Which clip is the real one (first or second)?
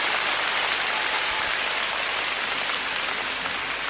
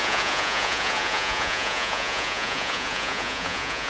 first